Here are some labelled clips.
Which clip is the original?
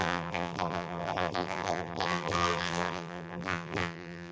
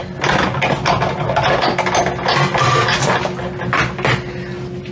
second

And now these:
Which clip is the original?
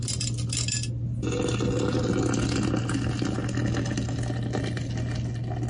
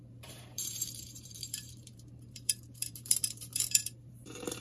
first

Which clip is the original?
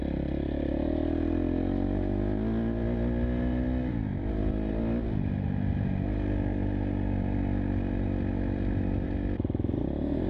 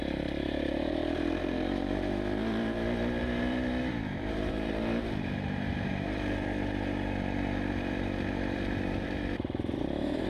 first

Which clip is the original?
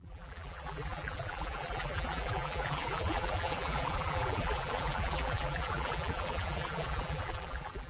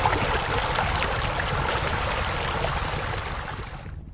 second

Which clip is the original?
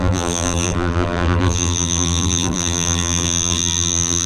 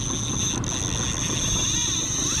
second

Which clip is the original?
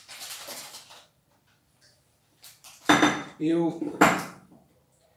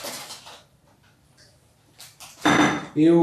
second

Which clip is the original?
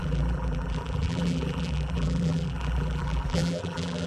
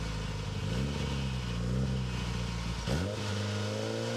second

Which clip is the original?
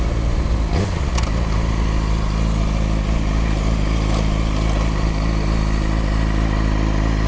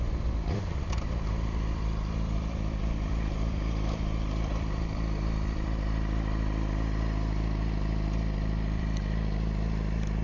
first